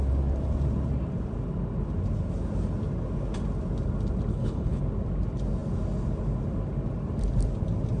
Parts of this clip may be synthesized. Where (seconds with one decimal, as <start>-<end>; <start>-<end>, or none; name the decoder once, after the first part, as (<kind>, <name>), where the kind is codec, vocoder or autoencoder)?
4.3-4.8 (codec, HILCodec)